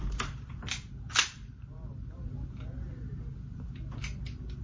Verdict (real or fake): real